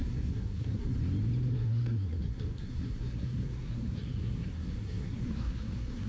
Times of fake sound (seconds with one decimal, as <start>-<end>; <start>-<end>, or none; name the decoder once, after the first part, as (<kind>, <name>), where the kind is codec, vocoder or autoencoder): 0.0-0.9 (codec, SNAC); 1.5-6.1